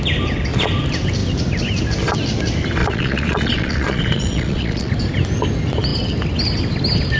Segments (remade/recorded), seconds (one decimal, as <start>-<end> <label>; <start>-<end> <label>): 0.0-2.8 recorded; 2.8-4.9 remade; 4.9-7.2 recorded